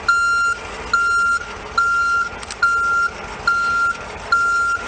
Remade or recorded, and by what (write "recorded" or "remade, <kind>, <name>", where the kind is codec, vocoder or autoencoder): recorded